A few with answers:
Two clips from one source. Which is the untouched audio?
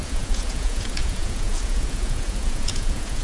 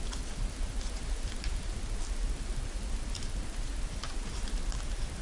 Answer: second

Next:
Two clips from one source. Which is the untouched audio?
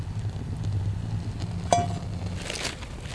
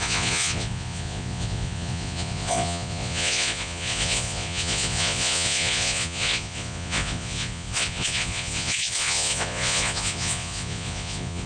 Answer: first